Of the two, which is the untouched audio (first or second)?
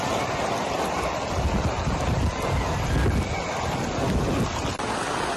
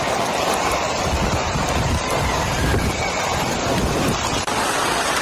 first